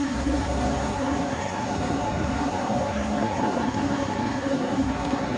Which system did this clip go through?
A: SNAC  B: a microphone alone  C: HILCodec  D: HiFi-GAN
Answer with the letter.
A